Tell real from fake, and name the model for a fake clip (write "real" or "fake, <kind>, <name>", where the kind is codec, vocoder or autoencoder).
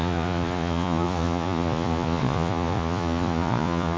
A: fake, vocoder, Vocos